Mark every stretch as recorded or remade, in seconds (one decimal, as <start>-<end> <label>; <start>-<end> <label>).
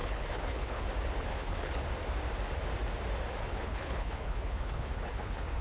0.0-0.8 remade; 0.8-1.3 recorded; 1.3-1.8 remade; 1.8-3.4 recorded; 3.4-5.6 remade